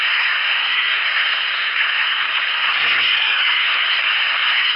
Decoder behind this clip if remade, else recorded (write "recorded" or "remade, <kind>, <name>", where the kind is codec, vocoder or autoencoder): remade, codec, SNAC